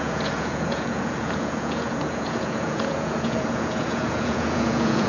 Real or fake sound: fake